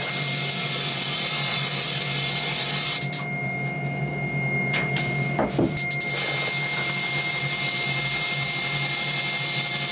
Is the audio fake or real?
real